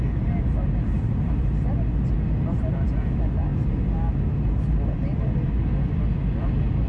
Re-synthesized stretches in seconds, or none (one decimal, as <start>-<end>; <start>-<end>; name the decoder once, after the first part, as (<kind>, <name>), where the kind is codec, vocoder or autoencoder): none

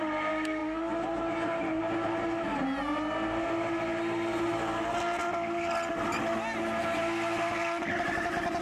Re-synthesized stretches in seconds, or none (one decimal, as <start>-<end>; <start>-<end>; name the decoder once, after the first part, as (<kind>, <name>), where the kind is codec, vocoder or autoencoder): none

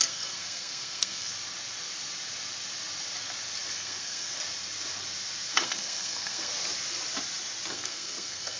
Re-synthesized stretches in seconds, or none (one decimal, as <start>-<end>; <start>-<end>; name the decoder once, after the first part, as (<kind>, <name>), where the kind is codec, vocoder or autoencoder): 0.0-1.3 (codec, SNAC); 3.7-4.4; 5.5-6.5; 7.7-8.6

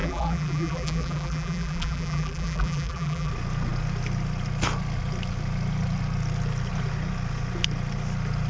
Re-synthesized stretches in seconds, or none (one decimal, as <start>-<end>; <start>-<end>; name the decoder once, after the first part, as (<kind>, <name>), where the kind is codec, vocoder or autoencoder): 0.0-3.3 (vocoder, BigVGAN v2)

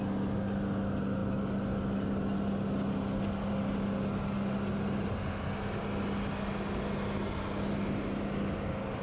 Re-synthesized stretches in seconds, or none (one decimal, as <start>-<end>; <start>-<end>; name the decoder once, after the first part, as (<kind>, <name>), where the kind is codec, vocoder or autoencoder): none

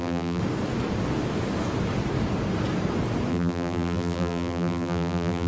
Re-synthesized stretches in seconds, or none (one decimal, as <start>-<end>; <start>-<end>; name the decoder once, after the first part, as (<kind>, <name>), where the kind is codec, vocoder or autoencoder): 0.0-0.4 (vocoder, BigVGAN v2); 3.3-5.5

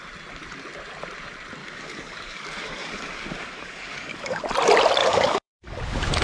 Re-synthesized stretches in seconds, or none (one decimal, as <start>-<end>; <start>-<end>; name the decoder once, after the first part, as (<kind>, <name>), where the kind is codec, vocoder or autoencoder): 1.6-4.4 (codec, DAC); 5.0-5.8